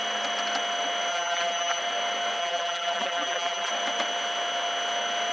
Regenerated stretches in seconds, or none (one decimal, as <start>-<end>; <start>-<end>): 1.1-1.8; 2.4-3.7